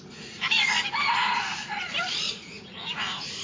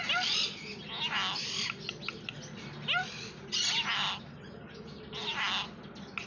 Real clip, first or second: second